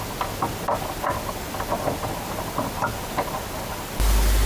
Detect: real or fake real